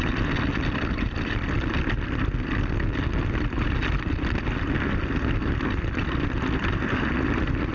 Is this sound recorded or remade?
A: recorded